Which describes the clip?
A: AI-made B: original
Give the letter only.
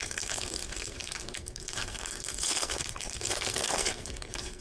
A